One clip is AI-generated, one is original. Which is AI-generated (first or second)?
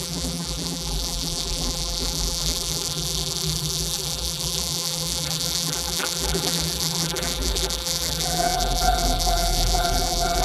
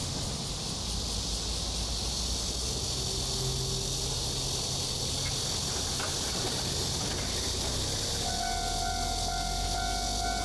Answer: first